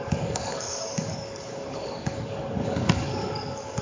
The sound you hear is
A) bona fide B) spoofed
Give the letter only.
B